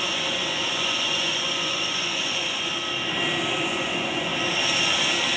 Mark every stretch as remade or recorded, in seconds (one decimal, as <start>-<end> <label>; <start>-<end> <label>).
0.0-2.7 remade; 2.7-3.7 recorded; 3.7-4.3 remade; 4.3-5.4 recorded